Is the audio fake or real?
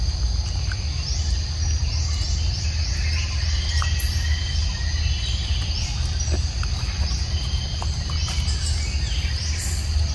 real